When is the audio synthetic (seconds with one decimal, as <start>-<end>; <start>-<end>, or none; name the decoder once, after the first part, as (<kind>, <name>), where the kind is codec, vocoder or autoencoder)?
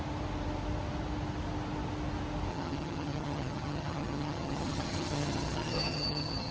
2.5-6.5 (vocoder, HiFi-GAN)